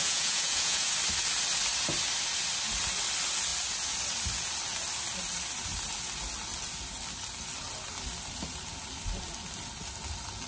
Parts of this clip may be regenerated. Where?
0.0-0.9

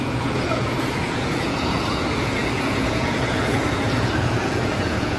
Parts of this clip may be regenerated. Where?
0.0-5.2

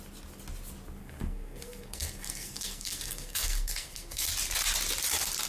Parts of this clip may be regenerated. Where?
1.0-4.3